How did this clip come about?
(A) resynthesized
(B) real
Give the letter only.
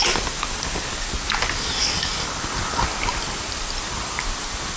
B